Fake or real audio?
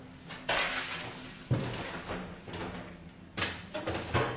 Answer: real